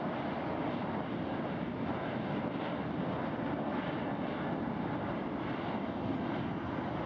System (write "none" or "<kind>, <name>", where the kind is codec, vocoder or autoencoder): none